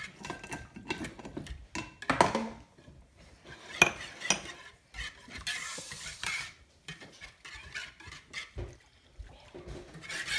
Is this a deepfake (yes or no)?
no